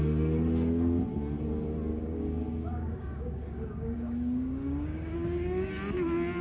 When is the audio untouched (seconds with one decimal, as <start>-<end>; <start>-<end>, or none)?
0.0-1.9; 5.7-6.4